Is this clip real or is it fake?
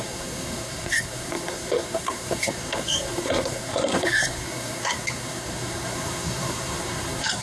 fake